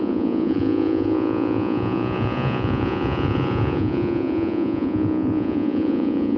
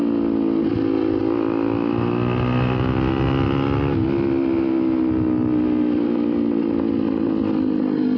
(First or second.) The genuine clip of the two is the second